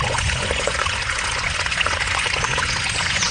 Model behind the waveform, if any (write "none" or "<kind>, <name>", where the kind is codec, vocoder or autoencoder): vocoder, Vocos